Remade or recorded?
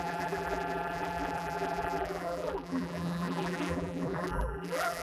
remade